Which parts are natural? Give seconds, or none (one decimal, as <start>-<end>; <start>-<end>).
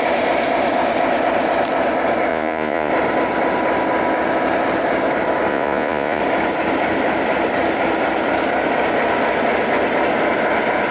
0.0-2.3; 2.9-5.5; 6.2-10.9